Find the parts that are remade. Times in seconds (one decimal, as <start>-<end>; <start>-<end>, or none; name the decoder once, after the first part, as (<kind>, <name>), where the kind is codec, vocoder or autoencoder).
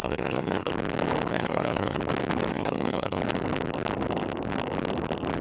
0.0-0.7 (codec, SNAC); 1.3-2.0; 2.5-3.2